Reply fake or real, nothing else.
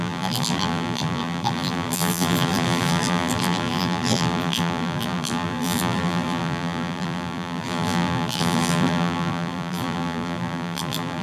fake